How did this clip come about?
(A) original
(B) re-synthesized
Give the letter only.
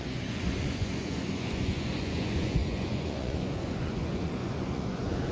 B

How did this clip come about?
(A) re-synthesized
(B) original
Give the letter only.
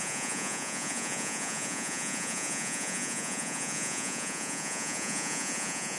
A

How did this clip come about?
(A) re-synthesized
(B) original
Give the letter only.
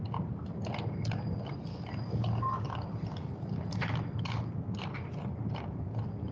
B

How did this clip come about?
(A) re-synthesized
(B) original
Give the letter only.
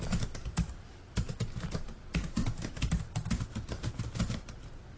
B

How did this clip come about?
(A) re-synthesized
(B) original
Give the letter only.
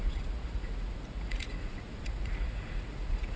A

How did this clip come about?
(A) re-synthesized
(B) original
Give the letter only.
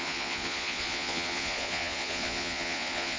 A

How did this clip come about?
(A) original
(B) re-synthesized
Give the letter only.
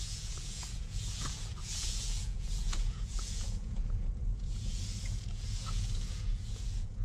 B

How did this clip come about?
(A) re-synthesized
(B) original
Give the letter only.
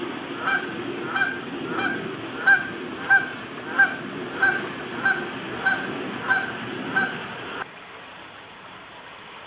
B